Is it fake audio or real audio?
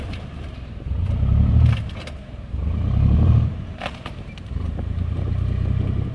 fake